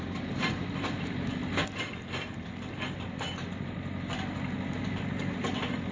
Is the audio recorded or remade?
recorded